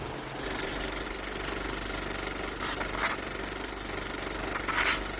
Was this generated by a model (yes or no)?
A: no